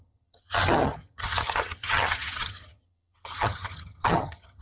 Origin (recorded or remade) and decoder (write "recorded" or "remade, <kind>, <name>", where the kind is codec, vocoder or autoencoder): remade, vocoder, HiFi-GAN